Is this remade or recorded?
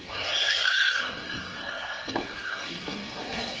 remade